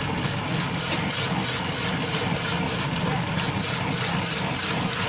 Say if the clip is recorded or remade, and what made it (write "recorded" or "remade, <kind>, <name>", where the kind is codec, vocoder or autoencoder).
recorded